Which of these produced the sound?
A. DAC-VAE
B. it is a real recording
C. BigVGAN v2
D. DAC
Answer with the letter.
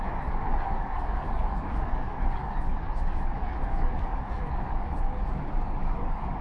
D